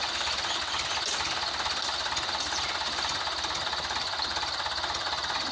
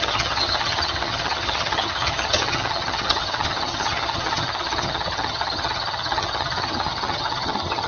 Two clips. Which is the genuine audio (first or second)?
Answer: first